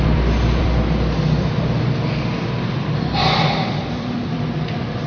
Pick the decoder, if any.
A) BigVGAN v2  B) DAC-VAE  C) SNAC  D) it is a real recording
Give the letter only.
A